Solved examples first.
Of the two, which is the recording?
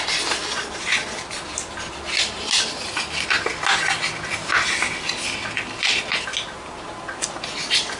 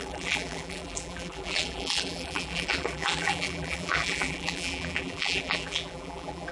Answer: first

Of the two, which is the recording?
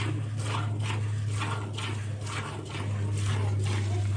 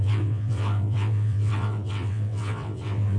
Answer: first